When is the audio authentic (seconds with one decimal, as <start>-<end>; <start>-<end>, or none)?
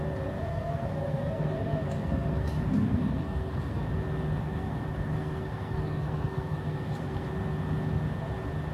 0.0-0.5; 3.9-4.4; 7.3-8.7